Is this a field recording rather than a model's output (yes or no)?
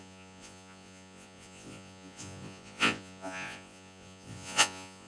no